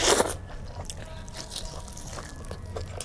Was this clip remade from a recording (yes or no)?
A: no